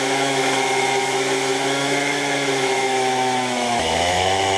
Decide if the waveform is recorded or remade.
remade